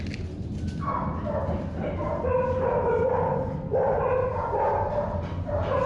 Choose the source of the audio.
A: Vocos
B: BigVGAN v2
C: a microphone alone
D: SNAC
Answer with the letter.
C